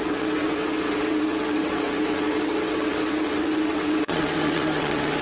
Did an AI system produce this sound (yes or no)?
yes